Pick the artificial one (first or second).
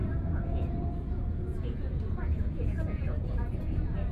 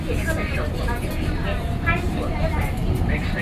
first